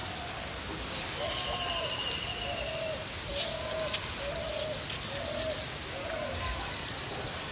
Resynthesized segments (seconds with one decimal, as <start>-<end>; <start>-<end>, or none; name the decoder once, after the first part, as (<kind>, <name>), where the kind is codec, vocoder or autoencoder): none